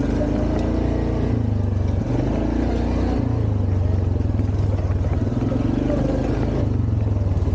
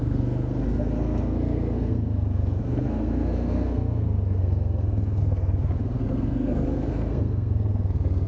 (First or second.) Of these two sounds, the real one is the first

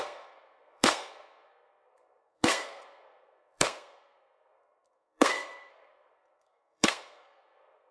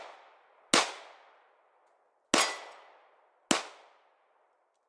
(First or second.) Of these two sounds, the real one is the second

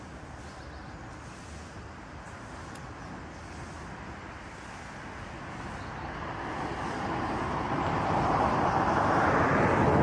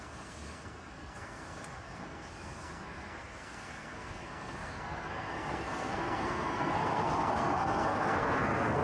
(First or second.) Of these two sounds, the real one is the first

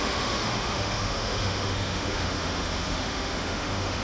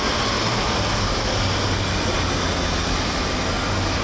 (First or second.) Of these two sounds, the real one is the second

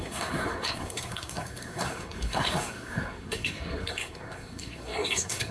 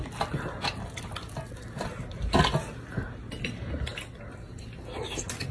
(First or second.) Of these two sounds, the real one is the second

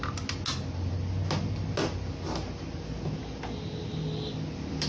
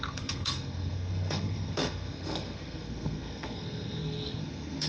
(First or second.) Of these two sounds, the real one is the first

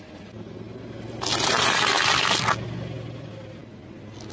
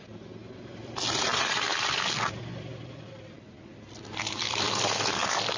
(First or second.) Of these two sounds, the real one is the first